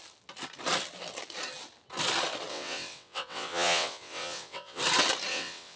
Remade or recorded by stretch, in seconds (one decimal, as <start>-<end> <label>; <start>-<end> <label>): 0.0-2.5 recorded; 2.5-4.8 remade; 4.8-5.3 recorded; 5.3-5.8 remade